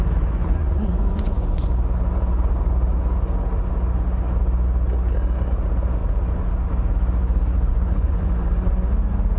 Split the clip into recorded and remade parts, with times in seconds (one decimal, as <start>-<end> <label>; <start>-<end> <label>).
0.0-1.7 remade; 1.7-7.7 recorded; 7.7-8.7 remade; 8.7-9.4 recorded